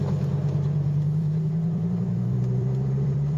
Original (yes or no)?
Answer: no